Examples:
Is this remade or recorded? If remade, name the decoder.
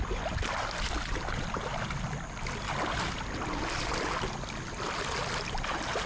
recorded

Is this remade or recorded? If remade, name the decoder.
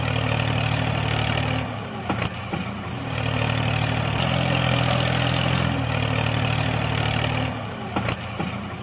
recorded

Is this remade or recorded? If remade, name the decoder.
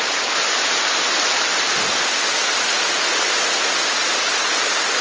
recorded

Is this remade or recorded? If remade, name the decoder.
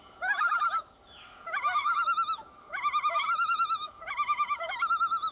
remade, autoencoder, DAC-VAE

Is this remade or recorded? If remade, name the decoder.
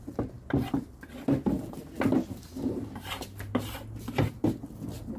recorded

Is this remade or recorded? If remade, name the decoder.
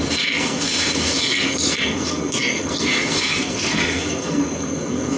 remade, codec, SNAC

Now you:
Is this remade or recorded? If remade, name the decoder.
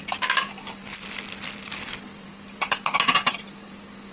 recorded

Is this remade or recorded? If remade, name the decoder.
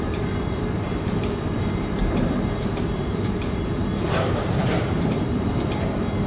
remade, vocoder, BigVGAN v2